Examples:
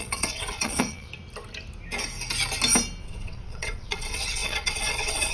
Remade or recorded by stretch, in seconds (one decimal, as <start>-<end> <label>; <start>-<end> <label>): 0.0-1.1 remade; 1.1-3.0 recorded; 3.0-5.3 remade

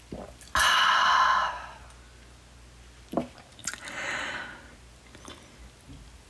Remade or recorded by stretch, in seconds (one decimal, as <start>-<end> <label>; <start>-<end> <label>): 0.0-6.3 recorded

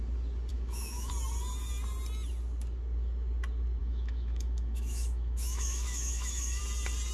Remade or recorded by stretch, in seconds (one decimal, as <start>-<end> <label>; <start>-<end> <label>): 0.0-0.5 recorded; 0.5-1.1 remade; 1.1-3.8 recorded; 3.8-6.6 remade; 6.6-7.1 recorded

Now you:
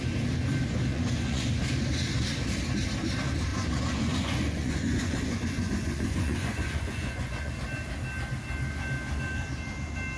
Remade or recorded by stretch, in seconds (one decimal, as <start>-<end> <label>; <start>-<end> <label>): 0.0-0.9 recorded; 0.9-1.5 remade; 1.5-3.5 recorded; 3.5-7.5 remade; 7.5-10.2 recorded

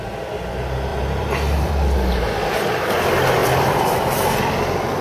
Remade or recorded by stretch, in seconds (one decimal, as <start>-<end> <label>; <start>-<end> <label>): 0.0-0.9 recorded; 0.9-1.7 remade; 1.7-3.4 recorded; 3.4-4.5 remade; 4.5-5.0 recorded

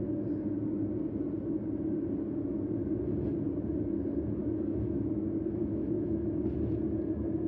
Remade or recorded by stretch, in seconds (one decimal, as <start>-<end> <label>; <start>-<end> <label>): 0.0-4.4 recorded; 4.4-5.1 remade; 5.1-5.6 recorded; 5.6-6.4 remade; 6.4-7.5 recorded